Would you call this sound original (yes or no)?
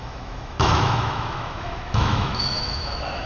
no